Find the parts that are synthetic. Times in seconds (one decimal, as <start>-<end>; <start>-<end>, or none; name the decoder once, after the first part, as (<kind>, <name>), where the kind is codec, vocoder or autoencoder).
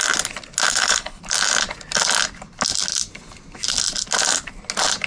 0.7-1.2 (codec, HILCodec)